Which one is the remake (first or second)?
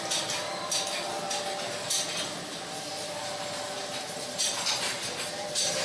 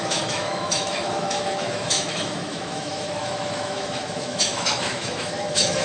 second